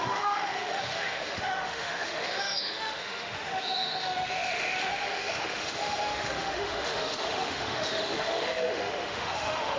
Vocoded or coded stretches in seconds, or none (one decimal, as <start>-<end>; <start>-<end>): 0.0-9.8